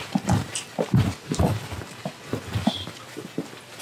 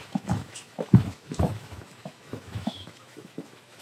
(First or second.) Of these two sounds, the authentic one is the first